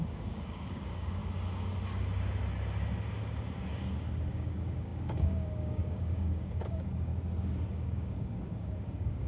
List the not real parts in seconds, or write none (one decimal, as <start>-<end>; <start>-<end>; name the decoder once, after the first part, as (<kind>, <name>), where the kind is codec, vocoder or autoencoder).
0.0-1.2 (codec, DAC); 4.3-7.1; 7.7-9.3